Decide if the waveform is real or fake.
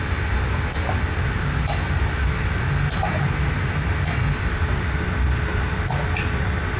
real